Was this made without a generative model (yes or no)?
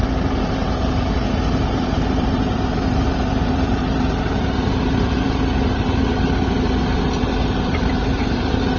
no